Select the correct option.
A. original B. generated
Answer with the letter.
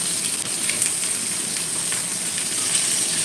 A